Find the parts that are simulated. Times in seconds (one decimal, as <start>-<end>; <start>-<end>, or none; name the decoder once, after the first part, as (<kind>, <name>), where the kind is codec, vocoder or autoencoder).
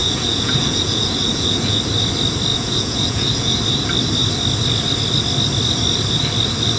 0.0-1.8 (vocoder, Vocos); 2.5-3.6